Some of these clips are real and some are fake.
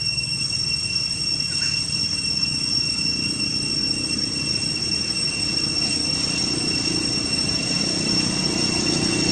real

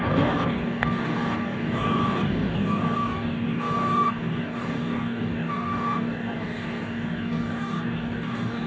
fake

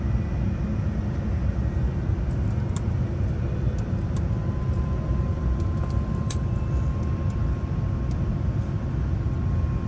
real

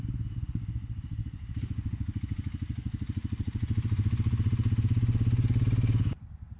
real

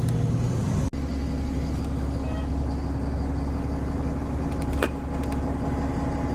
real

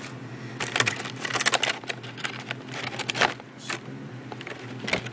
real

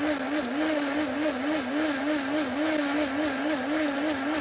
real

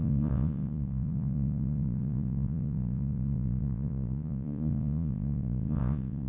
fake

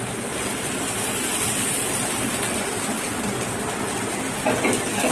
real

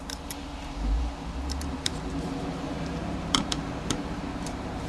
fake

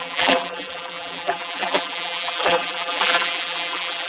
fake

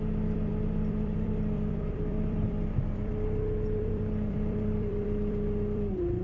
fake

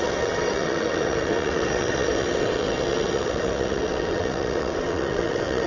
fake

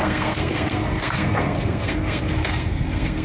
fake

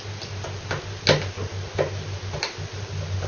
real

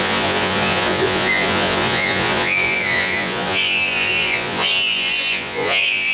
fake